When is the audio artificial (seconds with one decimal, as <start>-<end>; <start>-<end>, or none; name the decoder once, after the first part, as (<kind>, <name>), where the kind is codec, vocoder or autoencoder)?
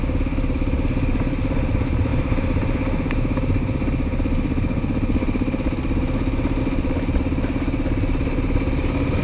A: none